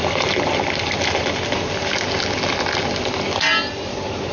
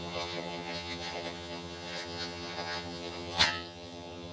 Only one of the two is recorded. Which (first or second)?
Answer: first